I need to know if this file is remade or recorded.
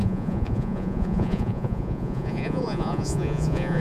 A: remade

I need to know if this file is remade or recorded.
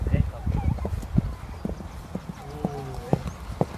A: recorded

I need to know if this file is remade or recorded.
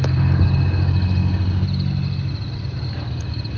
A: recorded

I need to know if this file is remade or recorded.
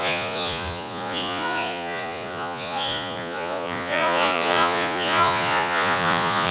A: remade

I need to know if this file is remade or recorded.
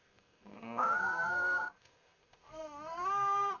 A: remade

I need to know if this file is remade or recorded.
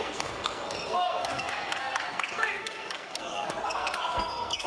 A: remade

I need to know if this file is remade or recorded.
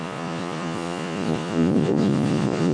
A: remade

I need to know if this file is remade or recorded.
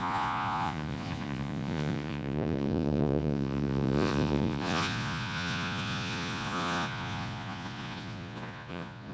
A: remade